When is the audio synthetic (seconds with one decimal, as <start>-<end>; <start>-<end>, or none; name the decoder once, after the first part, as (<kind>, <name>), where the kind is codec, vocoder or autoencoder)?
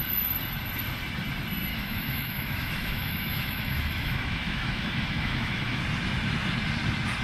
1.7-5.8 (autoencoder, DAC-VAE)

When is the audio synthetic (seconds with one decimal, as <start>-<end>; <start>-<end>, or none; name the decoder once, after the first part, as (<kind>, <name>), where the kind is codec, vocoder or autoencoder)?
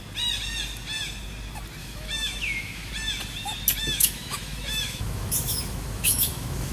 1.8-2.9 (autoencoder, DAC-VAE); 3.8-6.7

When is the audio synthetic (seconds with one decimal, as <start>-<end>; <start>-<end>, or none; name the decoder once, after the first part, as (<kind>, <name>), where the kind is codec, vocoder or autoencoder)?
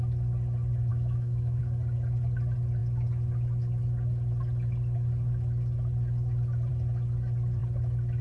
0.9-1.6 (autoencoder, DAC-VAE)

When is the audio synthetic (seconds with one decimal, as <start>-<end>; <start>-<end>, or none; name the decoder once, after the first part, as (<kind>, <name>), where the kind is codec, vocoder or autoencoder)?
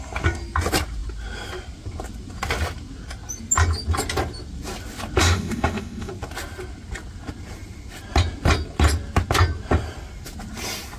5.2-6.1 (autoencoder, DAC-VAE)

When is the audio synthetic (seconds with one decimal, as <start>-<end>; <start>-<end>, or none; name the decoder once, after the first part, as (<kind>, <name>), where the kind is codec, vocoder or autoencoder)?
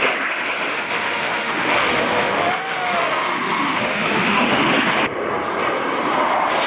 0.7-4.7 (autoencoder, DAC-VAE)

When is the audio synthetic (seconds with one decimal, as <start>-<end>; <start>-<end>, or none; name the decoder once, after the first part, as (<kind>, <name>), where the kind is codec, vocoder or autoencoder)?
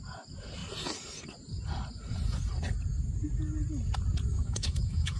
4.3-5.2 (autoencoder, DAC-VAE)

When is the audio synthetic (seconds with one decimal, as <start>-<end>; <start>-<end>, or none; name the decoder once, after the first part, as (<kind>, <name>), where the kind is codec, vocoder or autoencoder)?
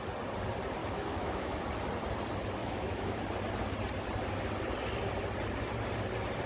0.8-1.6 (autoencoder, DAC-VAE); 2.6-3.2